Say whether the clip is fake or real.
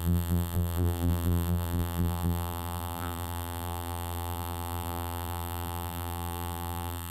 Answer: fake